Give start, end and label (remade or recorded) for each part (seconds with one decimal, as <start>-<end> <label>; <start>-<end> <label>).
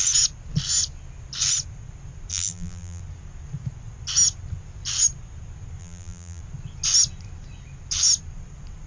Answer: 0.0-2.3 recorded; 2.3-3.0 remade; 3.0-5.8 recorded; 5.8-6.4 remade; 6.4-8.9 recorded